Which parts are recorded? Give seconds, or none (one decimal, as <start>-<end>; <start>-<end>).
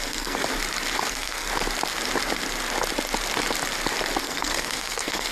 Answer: 0.4-1.1; 1.5-4.2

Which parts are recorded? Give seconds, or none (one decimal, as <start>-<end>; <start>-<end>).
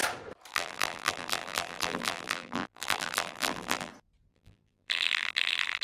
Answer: 0.0-0.5; 3.9-4.3